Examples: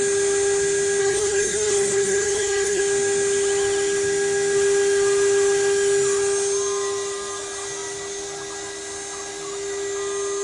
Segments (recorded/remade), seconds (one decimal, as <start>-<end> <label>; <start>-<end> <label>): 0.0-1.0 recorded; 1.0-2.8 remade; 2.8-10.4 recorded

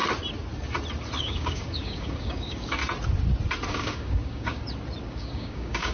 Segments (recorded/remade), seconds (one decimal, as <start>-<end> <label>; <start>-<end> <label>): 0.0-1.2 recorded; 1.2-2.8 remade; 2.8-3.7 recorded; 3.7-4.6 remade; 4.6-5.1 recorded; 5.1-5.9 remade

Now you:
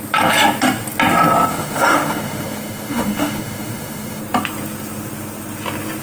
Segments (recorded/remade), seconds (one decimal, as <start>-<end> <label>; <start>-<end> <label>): 0.0-1.5 recorded; 1.5-4.2 remade; 4.2-6.0 recorded

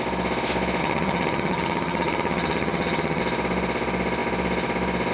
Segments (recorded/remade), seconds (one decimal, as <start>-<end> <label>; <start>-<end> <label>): 0.0-0.8 recorded; 0.8-3.2 remade; 3.2-5.1 recorded

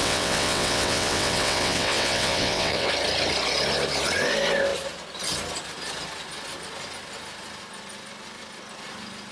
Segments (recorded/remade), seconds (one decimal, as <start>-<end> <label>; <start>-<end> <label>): 0.0-2.9 remade; 2.9-9.3 recorded

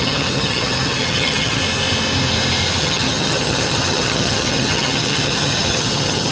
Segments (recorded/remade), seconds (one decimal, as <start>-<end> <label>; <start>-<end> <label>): 0.0-1.6 remade; 1.6-2.8 recorded; 2.8-6.3 remade

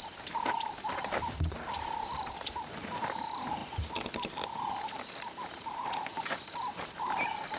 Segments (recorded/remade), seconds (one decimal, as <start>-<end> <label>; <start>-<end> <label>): 0.0-3.6 remade; 3.6-4.8 recorded; 4.8-7.6 remade

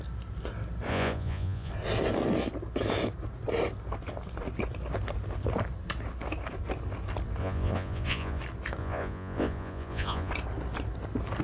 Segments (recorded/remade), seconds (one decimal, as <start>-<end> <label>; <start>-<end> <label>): 0.0-0.9 recorded; 0.9-1.7 remade; 1.7-7.4 recorded; 7.4-8.4 remade; 8.4-8.8 recorded; 8.8-10.3 remade; 10.3-11.4 recorded